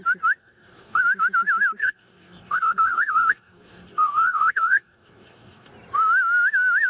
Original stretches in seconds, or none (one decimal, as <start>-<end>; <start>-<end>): 0.0-0.4; 1.0-1.8; 5.7-6.9